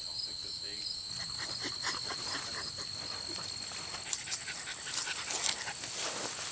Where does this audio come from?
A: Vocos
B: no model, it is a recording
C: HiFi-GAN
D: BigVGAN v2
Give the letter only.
B